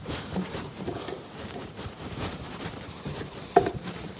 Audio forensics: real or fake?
fake